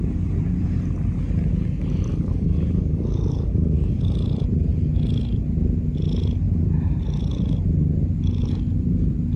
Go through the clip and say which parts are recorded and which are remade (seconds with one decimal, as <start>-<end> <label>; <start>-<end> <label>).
0.0-2.1 recorded; 2.1-4.0 remade; 4.0-9.4 recorded